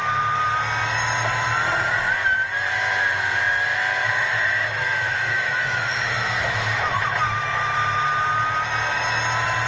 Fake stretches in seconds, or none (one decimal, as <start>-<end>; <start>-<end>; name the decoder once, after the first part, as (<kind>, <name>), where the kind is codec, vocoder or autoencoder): 4.0-6.9 (autoencoder, DAC-VAE)